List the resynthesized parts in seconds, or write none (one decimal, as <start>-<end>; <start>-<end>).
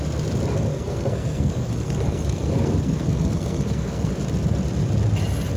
0.7-4.1